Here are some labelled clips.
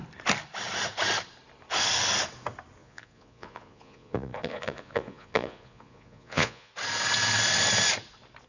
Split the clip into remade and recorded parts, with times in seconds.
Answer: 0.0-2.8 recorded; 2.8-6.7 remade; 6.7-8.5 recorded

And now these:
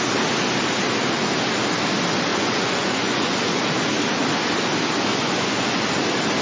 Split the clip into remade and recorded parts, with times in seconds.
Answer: 0.0-2.3 recorded; 2.3-3.6 remade; 3.6-5.1 recorded; 5.1-5.8 remade; 5.8-6.4 recorded